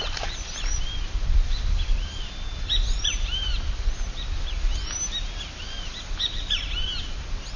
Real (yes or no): yes